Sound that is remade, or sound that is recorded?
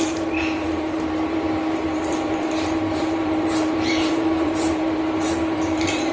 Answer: remade